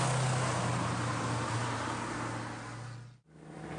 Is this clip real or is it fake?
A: real